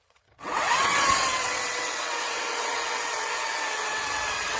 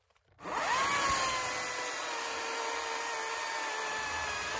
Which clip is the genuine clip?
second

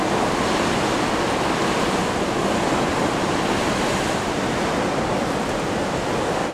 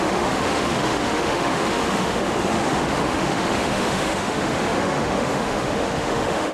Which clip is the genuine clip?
first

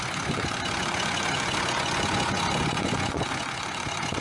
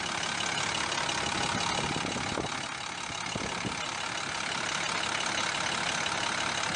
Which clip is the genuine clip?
second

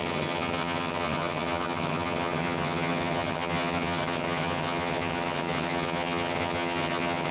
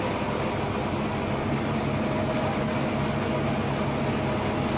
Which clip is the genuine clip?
second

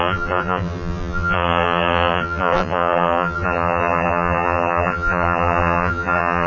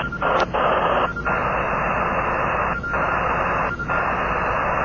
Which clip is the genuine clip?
second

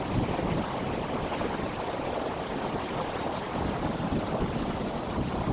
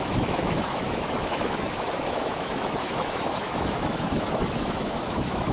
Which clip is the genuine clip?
first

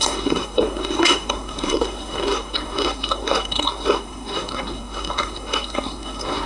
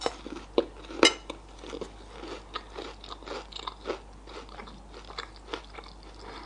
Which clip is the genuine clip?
second